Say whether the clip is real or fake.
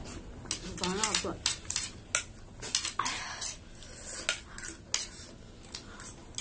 real